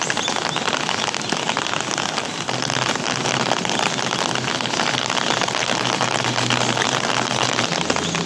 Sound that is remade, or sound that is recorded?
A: recorded